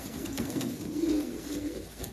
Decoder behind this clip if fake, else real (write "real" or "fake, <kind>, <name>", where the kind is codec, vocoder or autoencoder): fake, codec, SNAC